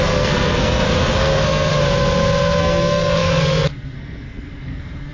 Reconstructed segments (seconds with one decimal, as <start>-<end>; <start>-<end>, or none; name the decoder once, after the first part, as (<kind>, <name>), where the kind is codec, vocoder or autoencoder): 0.0-1.7 (codec, SNAC); 2.6-5.1